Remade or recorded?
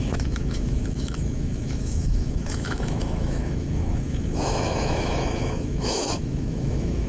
remade